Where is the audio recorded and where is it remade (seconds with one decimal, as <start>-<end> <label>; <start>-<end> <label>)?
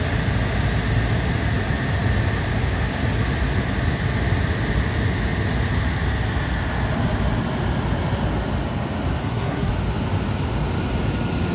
0.0-9.2 recorded; 9.2-9.7 remade; 9.7-11.5 recorded